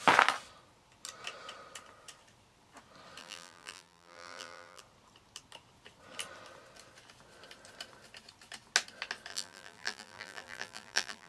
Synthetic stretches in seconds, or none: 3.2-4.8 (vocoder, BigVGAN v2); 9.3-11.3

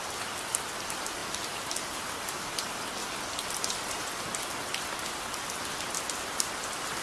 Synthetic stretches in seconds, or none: 1.2-2.1 (vocoder, BigVGAN v2)

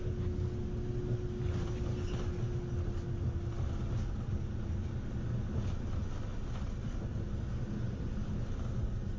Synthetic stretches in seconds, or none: 6.3-7.2 (vocoder, BigVGAN v2)